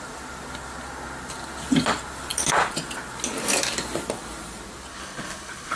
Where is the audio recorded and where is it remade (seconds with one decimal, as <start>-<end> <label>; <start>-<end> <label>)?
0.0-4.9 recorded; 4.9-5.8 remade